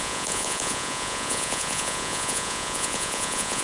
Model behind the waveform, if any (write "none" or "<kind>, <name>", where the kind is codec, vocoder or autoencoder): vocoder, Vocos